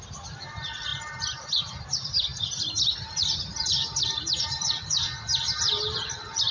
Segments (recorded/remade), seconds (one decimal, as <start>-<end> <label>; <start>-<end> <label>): 0.0-6.5 recorded